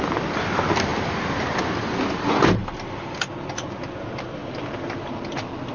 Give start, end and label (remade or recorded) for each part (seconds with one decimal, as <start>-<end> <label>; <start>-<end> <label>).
0.0-5.7 recorded